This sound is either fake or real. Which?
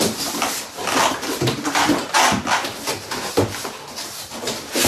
real